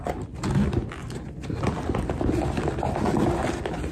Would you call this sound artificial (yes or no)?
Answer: no